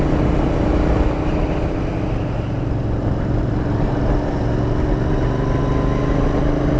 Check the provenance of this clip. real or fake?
real